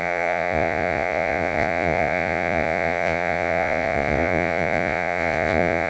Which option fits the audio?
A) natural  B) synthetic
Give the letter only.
B